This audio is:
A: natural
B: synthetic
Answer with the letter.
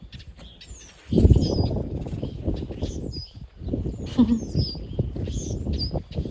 A